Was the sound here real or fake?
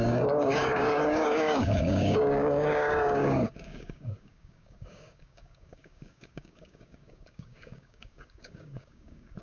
fake